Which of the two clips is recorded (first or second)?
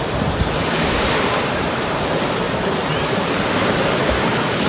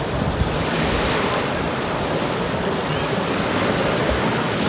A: second